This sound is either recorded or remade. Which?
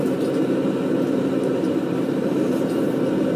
remade